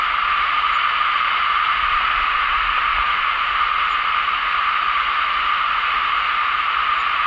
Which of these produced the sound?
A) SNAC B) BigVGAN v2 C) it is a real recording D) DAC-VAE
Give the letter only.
C